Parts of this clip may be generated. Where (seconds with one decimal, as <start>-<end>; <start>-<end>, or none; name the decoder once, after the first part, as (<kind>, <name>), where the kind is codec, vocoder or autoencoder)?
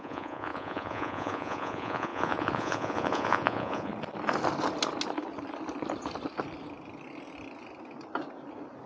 0.0-3.9 (vocoder, Vocos)